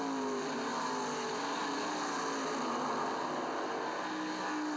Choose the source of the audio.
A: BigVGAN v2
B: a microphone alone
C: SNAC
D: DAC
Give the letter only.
B